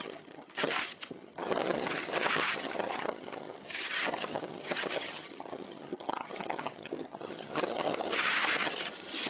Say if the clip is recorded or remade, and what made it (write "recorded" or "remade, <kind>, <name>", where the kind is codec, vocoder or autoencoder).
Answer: remade, vocoder, HiFi-GAN